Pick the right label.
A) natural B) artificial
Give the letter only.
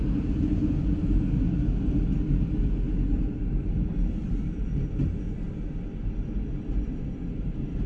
A